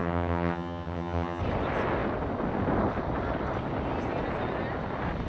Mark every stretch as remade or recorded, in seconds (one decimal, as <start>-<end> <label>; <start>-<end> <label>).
0.0-1.4 remade; 1.4-5.3 recorded

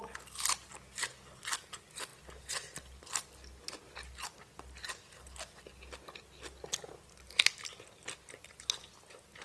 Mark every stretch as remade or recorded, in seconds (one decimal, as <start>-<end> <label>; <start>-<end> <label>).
0.0-9.4 recorded

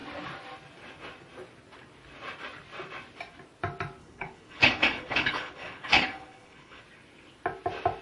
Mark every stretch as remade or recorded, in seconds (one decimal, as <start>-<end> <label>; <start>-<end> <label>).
0.0-4.0 recorded; 4.0-6.8 remade; 6.8-8.0 recorded

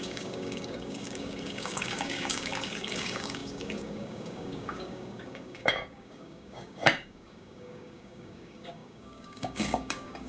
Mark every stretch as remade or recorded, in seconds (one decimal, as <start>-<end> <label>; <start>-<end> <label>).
0.0-10.3 remade

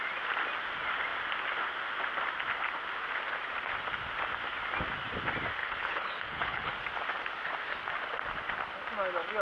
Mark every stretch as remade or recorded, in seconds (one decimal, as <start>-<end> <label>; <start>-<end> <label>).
0.0-5.6 recorded; 5.6-6.7 remade; 6.7-9.4 recorded

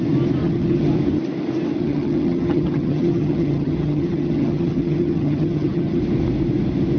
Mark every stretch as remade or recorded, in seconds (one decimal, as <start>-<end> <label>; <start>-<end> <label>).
0.0-0.4 recorded; 0.4-0.9 remade; 0.9-1.8 recorded; 1.8-6.0 remade; 6.0-7.0 recorded

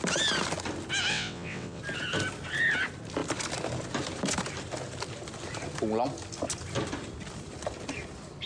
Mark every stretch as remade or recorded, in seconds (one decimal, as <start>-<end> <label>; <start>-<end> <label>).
0.0-1.1 recorded; 1.1-1.8 remade; 1.8-8.5 recorded

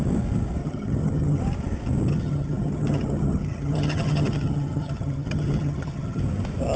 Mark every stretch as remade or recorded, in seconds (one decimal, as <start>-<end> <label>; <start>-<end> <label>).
0.0-0.6 recorded; 0.6-1.4 remade; 1.4-2.1 recorded; 2.1-6.2 remade; 6.2-6.8 recorded